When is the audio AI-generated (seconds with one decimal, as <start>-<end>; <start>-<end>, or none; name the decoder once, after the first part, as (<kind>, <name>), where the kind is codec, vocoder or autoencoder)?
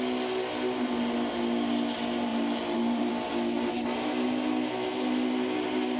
2.3-3.1 (vocoder, BigVGAN v2)